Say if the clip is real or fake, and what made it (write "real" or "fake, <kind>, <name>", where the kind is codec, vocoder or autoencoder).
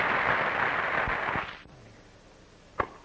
real